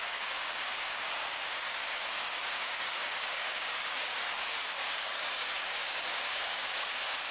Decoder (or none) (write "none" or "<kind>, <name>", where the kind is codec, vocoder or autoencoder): codec, DAC